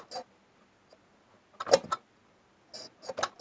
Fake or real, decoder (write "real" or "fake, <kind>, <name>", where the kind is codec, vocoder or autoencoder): real